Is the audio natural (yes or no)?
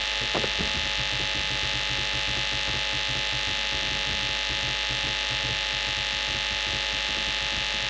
yes